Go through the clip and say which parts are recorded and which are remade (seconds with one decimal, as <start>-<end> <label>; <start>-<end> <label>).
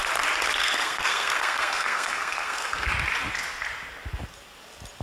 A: 0.0-0.6 recorded; 0.6-2.9 remade; 2.9-5.0 recorded